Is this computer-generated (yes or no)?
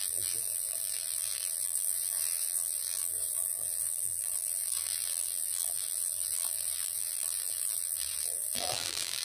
yes